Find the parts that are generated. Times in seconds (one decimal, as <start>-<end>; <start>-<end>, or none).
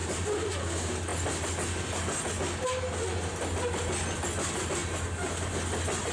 0.0-0.5